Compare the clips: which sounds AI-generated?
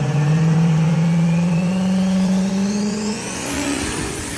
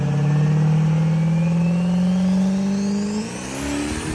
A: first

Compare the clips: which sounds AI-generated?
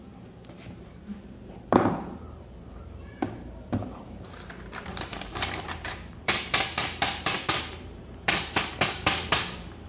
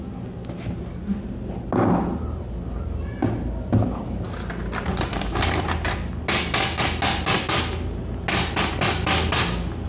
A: first